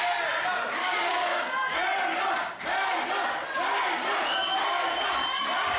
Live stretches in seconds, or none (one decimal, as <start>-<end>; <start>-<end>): 0.0-0.8; 1.4-5.8